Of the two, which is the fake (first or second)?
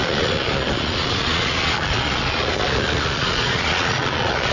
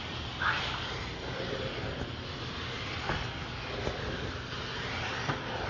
first